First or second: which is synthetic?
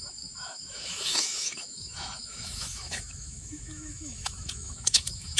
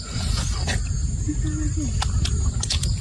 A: first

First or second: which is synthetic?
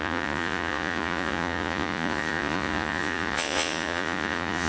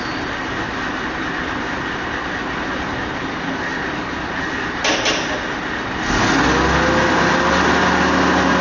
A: first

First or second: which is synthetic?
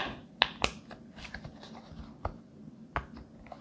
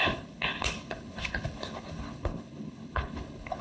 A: second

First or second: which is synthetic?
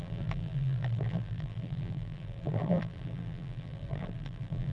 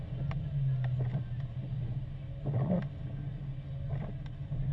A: first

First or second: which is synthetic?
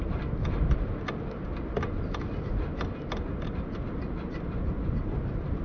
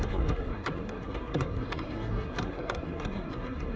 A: second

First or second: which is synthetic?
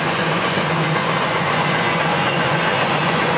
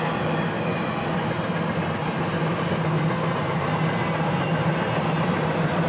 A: first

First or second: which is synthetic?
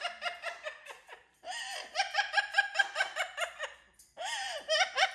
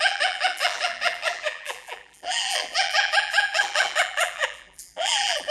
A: second